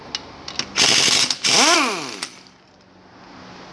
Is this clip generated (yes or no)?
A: no